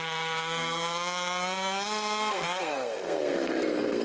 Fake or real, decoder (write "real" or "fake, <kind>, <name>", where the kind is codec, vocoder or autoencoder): fake, codec, SNAC